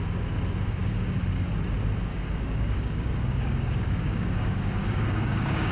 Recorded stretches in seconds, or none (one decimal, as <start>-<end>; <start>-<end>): 0.0-0.8; 1.5-2.1